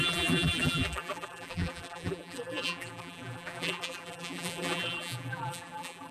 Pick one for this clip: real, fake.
fake